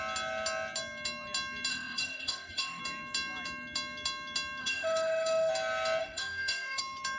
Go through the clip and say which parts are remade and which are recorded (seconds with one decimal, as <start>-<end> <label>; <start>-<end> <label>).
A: 0.0-1.7 recorded; 1.7-2.8 remade; 2.8-4.6 recorded; 4.6-5.5 remade; 5.5-6.0 recorded; 6.0-6.8 remade; 6.8-7.2 recorded